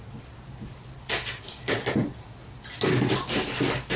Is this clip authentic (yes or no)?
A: yes